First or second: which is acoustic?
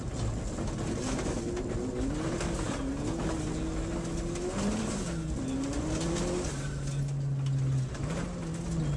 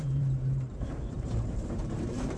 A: first